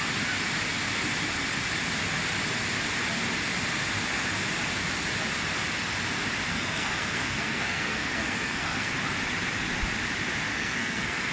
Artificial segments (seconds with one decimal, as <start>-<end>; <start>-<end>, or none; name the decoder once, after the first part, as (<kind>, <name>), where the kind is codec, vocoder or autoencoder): 6.5-8.9 (codec, SNAC); 10.5-11.3